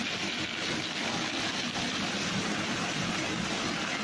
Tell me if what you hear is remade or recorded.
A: recorded